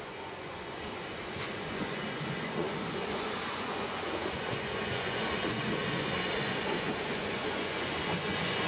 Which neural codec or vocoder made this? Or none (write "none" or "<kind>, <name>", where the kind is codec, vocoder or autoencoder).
vocoder, Vocos